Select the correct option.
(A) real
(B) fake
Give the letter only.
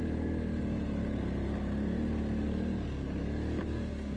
A